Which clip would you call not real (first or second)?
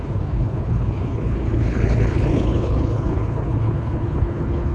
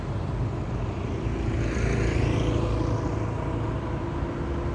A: first